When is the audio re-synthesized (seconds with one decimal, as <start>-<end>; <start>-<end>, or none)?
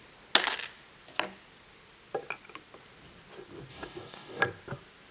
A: 3.7-4.4